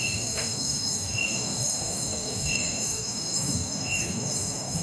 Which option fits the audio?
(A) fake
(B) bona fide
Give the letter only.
A